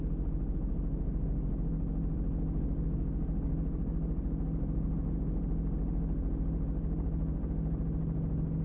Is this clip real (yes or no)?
yes